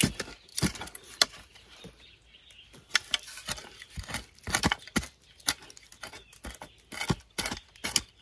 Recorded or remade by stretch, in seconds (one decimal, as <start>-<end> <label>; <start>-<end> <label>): 0.0-0.5 recorded; 0.5-2.0 remade; 2.0-8.2 recorded